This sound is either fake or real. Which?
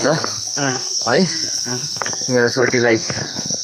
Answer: fake